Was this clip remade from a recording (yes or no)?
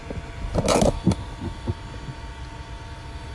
no